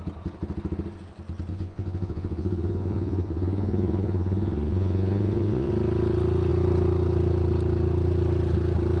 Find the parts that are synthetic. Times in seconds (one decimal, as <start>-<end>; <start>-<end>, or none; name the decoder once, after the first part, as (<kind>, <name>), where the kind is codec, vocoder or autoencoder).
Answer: 1.5-5.7 (vocoder, Vocos)